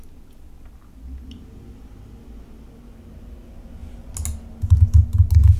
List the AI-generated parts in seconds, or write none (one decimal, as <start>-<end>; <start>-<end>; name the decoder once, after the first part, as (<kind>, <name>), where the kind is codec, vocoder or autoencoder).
none